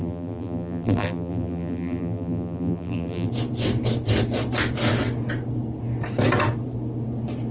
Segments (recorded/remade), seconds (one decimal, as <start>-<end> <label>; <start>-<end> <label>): 0.0-3.3 remade; 3.3-7.5 recorded